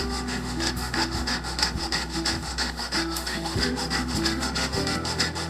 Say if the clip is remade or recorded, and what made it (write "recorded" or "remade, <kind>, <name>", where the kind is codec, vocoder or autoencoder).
remade, autoencoder, DAC-VAE